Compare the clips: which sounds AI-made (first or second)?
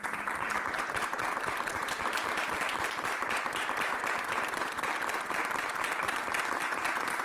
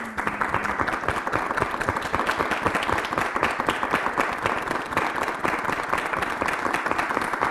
first